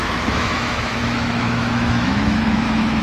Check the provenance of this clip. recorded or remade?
remade